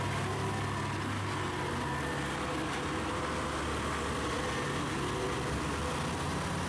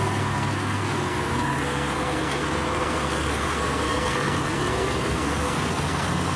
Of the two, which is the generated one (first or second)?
second